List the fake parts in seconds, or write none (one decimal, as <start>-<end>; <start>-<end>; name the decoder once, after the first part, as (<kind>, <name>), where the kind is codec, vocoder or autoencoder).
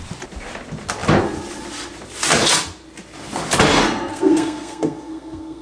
4.1-5.6 (codec, SNAC)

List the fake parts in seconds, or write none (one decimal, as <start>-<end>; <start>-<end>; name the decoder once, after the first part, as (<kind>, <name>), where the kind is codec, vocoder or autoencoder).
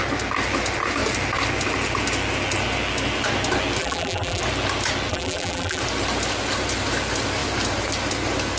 3.8-4.4 (vocoder, BigVGAN v2); 5.1-5.8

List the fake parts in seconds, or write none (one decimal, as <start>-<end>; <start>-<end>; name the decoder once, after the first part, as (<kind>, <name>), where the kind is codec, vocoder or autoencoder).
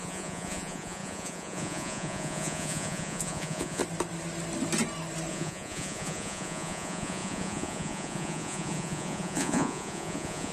0.0-3.8 (vocoder, Vocos); 5.3-10.5